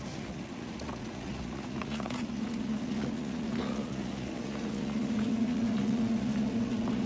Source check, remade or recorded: remade